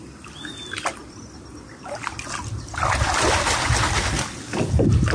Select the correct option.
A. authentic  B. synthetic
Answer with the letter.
A